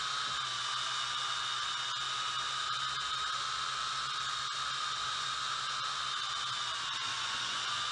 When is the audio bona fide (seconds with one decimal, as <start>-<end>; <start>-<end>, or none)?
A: 0.0-4.8; 5.3-7.1